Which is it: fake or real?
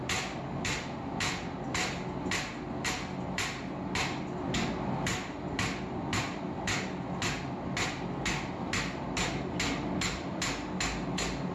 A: real